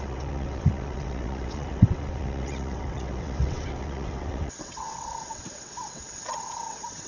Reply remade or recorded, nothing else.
remade